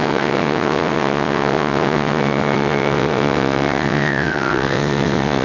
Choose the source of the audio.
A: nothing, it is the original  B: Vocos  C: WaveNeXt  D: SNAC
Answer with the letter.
C